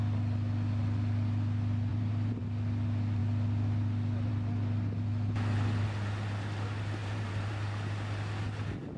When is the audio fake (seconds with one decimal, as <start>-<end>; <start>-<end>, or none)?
1.9-2.4; 7.0-7.5